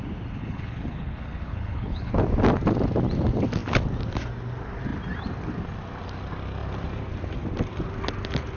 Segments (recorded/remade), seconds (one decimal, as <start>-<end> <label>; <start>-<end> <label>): 0.0-0.4 recorded; 0.4-2.1 remade; 2.1-8.6 recorded